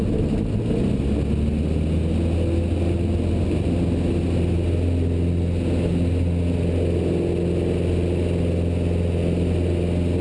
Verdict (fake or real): real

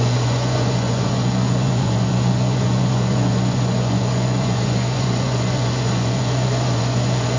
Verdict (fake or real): fake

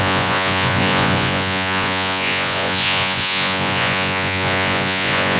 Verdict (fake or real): fake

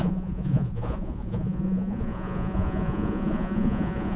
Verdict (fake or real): fake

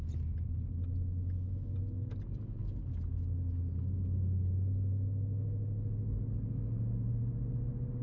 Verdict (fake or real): real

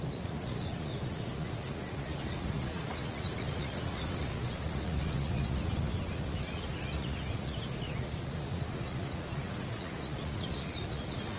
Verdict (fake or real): fake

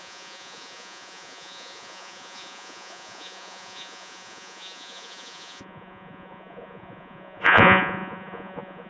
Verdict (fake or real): fake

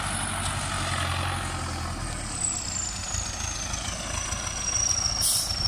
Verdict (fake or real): real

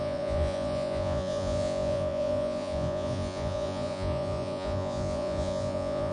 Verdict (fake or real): fake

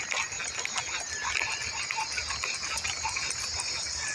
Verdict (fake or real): real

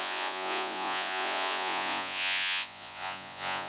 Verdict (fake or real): fake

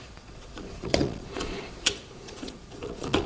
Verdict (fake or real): fake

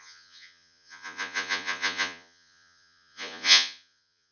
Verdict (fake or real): fake